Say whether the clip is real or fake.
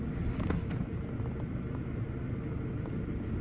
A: real